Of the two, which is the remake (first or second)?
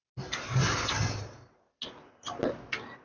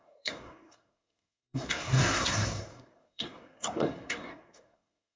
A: second